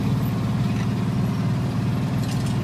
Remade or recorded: recorded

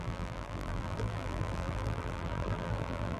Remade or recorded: remade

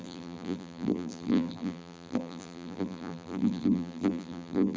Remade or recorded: remade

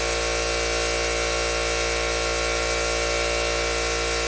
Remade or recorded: recorded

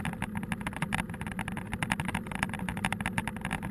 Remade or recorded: recorded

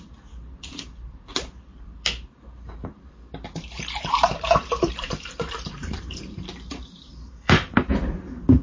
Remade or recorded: remade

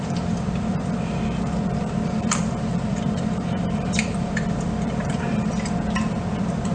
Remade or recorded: remade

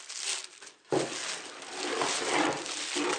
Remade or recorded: recorded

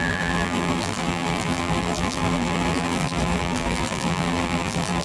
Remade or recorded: remade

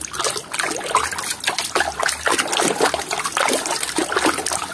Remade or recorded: recorded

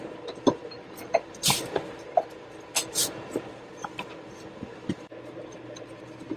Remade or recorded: remade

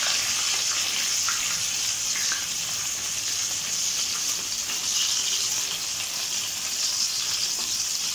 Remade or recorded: recorded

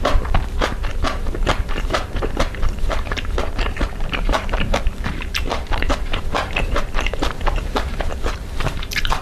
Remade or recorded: remade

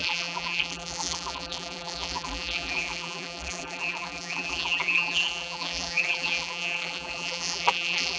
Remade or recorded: remade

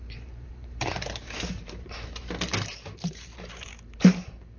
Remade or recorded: remade